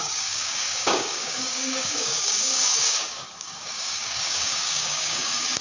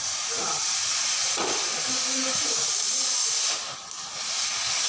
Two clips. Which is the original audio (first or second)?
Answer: second